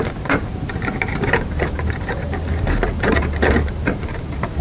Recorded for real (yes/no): no